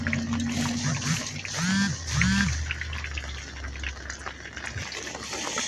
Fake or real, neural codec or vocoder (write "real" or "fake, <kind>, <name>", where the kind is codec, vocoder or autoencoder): real